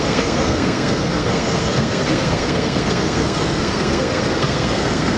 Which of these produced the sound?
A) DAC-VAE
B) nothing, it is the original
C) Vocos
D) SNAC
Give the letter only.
D